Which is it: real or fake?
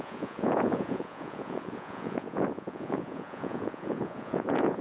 fake